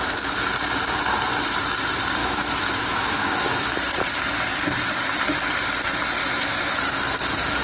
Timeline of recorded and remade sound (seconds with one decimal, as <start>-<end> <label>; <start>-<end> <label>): 0.0-2.2 recorded; 2.2-3.8 remade; 3.8-6.2 recorded; 6.2-6.8 remade; 6.8-7.6 recorded